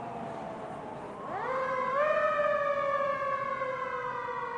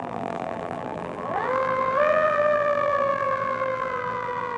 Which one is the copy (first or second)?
second